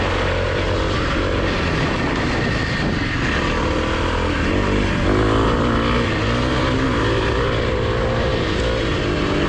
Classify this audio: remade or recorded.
recorded